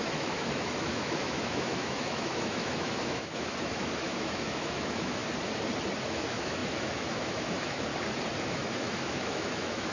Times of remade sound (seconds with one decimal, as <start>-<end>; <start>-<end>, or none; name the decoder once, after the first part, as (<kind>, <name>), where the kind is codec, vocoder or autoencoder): 0.0-5.2 (autoencoder, DAC-VAE); 6.0-7.9; 8.4-9.9